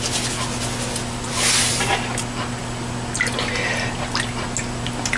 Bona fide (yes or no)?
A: yes